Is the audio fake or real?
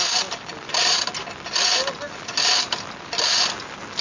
real